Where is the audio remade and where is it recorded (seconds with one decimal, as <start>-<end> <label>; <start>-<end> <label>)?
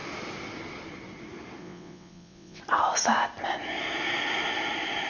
0.0-1.6 recorded; 1.6-2.6 remade; 2.6-5.1 recorded